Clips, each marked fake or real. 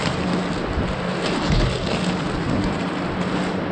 real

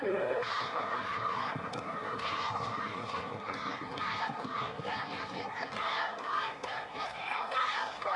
fake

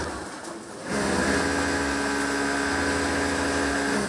real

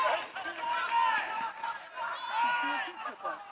real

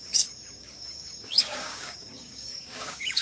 fake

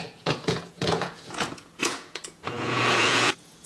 fake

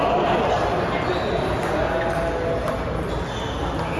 real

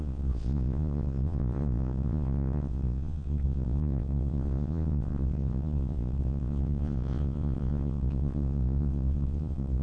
fake